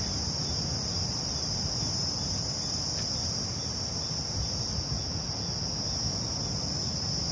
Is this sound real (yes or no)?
yes